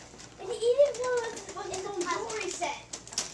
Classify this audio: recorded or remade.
recorded